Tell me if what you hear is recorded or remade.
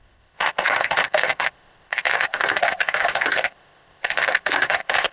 remade